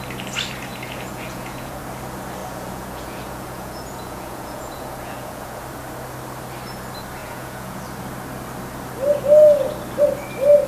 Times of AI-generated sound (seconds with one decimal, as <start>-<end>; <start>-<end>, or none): 0.7-1.8; 2.4-5.6; 7.2-7.8